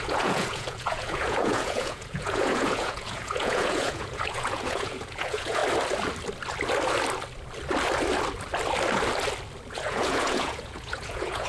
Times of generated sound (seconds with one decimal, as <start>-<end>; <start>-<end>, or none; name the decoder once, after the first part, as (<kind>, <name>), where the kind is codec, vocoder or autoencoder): 0.0-5.6 (vocoder, Vocos); 9.7-11.5